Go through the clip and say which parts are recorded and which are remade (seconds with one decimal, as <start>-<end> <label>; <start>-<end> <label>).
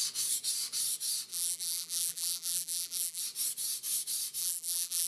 0.0-1.3 recorded; 1.3-3.2 remade; 3.2-4.4 recorded; 4.4-5.1 remade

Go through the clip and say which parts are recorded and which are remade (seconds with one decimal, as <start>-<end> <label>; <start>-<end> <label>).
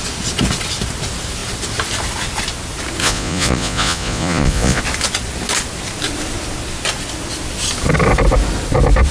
0.0-3.0 recorded; 3.0-4.8 remade; 4.8-9.1 recorded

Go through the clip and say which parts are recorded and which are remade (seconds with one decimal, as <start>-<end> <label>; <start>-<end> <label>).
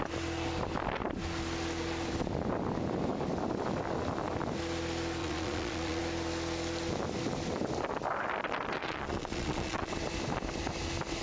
0.0-5.2 recorded; 5.2-6.0 remade; 6.0-8.8 recorded; 8.8-9.9 remade; 9.9-11.2 recorded